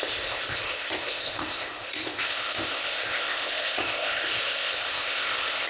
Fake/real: fake